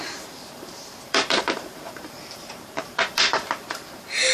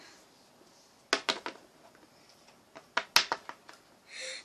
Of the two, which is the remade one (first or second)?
first